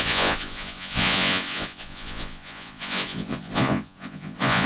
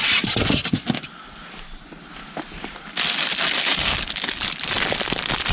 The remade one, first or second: first